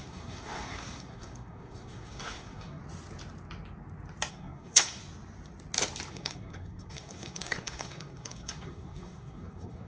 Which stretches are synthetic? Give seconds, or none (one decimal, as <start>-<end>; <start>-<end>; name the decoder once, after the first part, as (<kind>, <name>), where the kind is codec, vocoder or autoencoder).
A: 0.0-2.8 (codec, SNAC); 4.3-5.0; 6.1-9.9

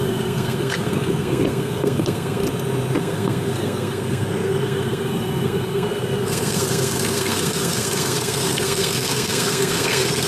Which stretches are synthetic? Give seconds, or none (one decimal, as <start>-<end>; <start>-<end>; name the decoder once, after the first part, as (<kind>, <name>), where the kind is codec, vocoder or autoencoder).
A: 0.0-2.4 (codec, SNAC); 3.0-10.3

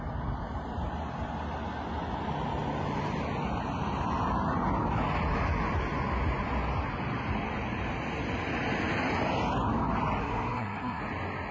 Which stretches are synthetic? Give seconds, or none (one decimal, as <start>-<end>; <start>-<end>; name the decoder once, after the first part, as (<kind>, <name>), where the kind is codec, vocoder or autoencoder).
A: 10.2-11.0 (codec, SNAC)

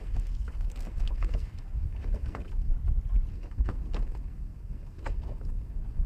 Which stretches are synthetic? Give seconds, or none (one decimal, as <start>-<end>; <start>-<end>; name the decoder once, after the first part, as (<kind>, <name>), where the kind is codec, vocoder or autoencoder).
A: 0.0-2.7 (codec, SNAC); 3.3-6.1

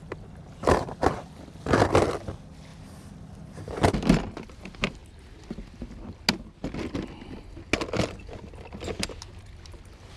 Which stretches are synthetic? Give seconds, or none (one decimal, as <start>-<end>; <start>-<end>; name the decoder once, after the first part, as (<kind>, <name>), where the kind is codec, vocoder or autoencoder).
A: none

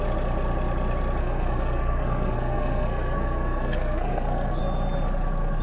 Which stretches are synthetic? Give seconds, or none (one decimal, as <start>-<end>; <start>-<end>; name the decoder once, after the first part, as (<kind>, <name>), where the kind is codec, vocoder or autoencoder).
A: 1.2-4.6 (codec, SNAC)

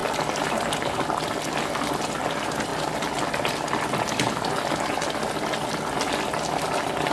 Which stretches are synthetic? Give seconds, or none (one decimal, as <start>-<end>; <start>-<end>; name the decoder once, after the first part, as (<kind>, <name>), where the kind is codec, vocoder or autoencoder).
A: none